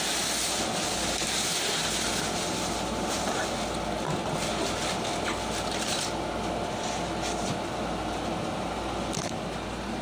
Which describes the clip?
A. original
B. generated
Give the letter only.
A